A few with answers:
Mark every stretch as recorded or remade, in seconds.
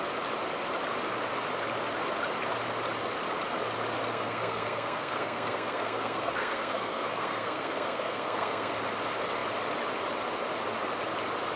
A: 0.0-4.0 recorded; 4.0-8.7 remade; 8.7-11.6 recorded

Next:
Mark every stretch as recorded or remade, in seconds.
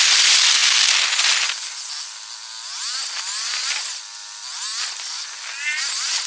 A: 0.0-6.3 recorded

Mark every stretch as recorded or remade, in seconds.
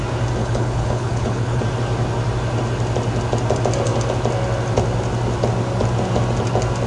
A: 0.0-0.4 recorded; 0.4-1.6 remade; 1.6-6.9 recorded